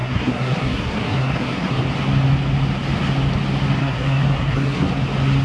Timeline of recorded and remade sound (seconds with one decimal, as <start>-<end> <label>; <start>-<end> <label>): 0.0-1.8 remade; 1.8-3.8 recorded; 3.8-4.9 remade; 4.9-5.4 recorded